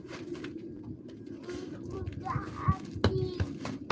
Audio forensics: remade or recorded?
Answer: recorded